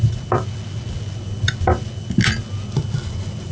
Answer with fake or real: real